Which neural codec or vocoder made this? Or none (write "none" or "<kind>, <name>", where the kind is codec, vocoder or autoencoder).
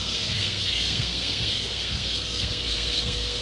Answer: codec, SNAC